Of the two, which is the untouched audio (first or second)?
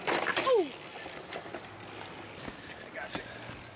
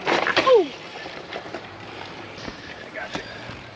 first